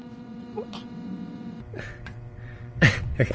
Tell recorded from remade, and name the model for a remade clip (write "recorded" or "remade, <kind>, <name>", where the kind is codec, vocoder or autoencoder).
remade, vocoder, WaveNeXt